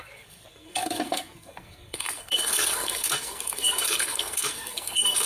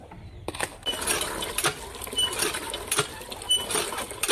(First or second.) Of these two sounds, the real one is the second